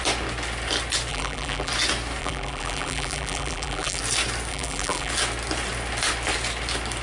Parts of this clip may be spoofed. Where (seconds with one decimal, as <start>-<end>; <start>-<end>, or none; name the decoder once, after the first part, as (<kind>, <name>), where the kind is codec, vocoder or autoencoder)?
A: 1.1-1.7 (vocoder, BigVGAN v2); 2.2-4.0; 4.5-5.1